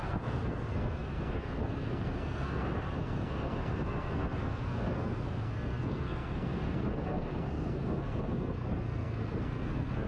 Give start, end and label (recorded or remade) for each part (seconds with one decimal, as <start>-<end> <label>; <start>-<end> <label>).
0.0-10.1 remade

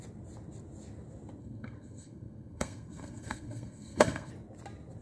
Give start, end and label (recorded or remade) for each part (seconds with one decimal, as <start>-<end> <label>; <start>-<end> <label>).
0.0-1.4 recorded; 1.4-4.3 remade; 4.3-5.0 recorded

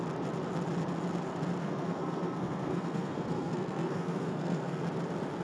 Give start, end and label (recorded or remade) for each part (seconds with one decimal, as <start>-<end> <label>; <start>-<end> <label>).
0.0-1.6 recorded; 1.6-4.8 remade; 4.8-5.4 recorded

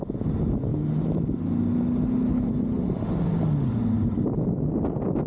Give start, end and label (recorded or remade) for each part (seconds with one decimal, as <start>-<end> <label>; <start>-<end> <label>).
0.0-5.3 recorded

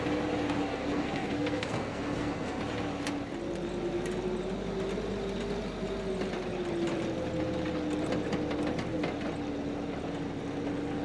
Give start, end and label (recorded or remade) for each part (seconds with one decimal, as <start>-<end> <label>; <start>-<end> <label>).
0.0-0.7 recorded; 0.7-2.6 remade; 2.6-11.0 recorded

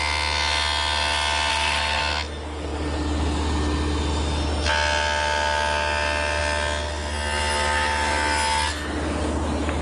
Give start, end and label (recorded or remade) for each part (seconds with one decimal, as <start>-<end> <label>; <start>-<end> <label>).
0.0-1.5 recorded; 1.5-2.0 remade; 2.0-9.8 recorded

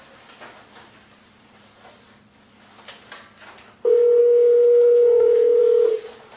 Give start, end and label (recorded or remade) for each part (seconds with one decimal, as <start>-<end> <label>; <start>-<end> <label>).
0.0-4.2 recorded; 4.2-5.6 remade; 5.6-6.4 recorded

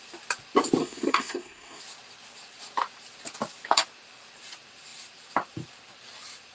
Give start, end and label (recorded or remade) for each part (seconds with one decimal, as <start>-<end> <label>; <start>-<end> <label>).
0.0-0.8 recorded; 0.8-1.8 remade; 1.8-6.5 recorded